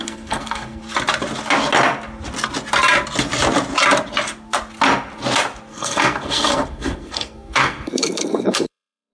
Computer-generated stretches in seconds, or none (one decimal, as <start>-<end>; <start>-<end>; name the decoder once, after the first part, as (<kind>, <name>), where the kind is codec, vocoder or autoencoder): 0.0-0.8 (codec, SNAC); 5.7-9.1